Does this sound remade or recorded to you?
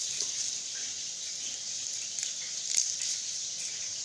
recorded